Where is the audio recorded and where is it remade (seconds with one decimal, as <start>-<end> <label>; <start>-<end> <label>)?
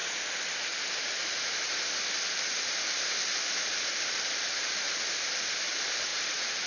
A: 0.0-4.0 recorded; 4.0-6.7 remade